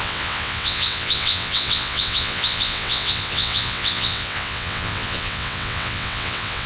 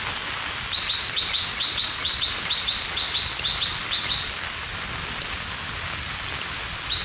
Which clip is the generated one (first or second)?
first